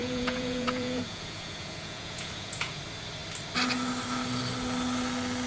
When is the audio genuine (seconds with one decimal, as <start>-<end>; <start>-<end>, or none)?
2.8-5.5